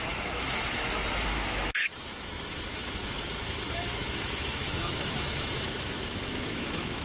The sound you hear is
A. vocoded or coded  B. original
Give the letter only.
A